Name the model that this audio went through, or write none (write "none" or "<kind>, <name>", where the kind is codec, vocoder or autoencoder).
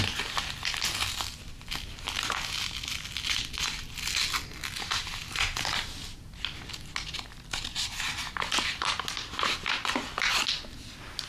none